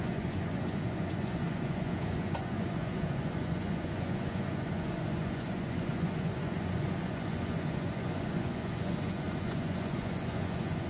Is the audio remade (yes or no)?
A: yes